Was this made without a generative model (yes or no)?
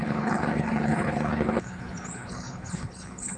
no